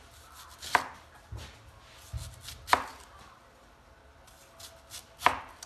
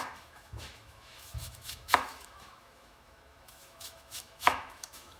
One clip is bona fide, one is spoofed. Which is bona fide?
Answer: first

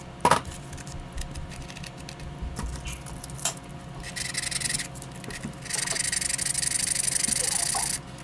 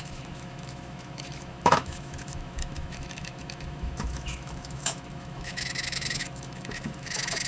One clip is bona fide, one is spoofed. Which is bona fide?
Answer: first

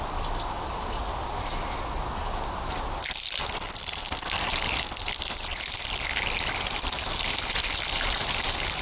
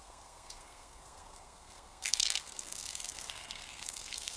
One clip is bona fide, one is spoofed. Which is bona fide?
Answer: first